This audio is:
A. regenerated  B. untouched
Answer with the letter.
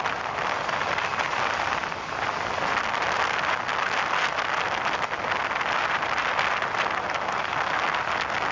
B